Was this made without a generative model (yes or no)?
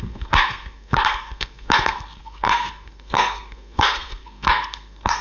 no